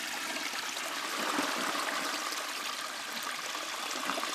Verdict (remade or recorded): recorded